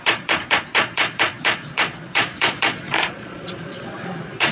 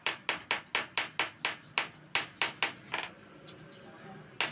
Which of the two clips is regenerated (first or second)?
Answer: first